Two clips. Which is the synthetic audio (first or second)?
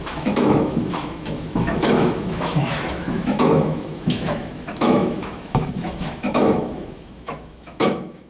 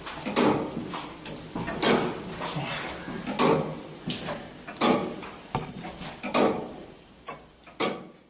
first